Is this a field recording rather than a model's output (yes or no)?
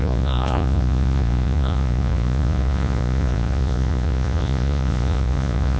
no